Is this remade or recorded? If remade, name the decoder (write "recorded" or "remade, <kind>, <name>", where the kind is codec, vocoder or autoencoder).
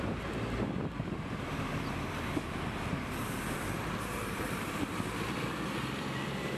remade, vocoder, BigVGAN v2